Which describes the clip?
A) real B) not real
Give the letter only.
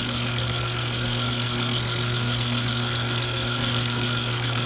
B